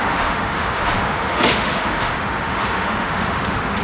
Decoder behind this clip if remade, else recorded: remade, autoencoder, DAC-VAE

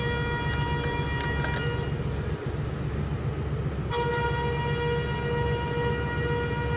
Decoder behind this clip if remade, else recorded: recorded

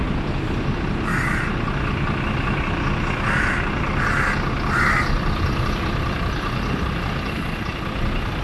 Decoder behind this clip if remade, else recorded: recorded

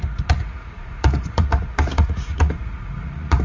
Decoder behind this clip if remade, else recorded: remade, vocoder, Vocos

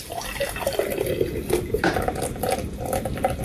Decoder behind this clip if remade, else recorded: remade, vocoder, BigVGAN v2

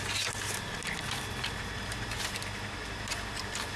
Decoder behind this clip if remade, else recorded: recorded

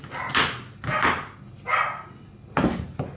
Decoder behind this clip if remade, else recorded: recorded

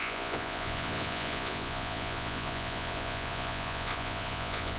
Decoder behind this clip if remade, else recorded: remade, vocoder, Vocos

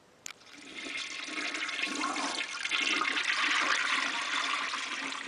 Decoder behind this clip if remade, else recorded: recorded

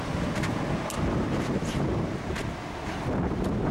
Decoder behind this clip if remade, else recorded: recorded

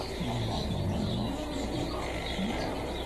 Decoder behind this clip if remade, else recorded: recorded